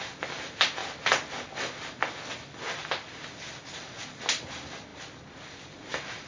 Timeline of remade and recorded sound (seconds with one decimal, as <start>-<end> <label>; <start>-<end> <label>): 0.0-6.3 recorded